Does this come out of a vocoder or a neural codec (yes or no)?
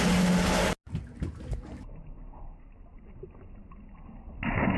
no